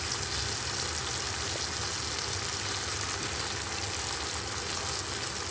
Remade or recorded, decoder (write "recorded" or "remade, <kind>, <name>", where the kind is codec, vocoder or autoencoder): recorded